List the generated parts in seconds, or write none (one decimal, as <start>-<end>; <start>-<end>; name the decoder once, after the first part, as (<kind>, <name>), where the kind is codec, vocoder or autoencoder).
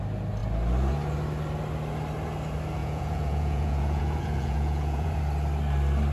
2.8-5.2 (vocoder, Vocos)